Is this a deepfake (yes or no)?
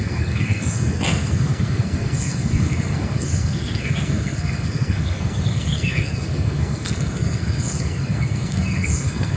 yes